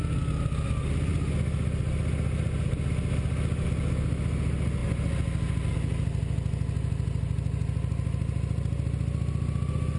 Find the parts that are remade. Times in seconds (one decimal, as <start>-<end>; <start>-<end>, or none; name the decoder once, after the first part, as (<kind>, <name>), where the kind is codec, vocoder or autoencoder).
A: none